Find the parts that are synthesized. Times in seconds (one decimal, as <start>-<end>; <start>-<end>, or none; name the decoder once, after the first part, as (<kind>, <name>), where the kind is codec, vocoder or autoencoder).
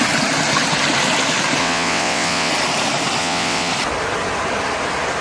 1.6-2.5 (vocoder, WaveNeXt); 3.2-3.7